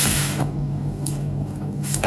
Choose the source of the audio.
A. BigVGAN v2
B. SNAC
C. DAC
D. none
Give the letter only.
C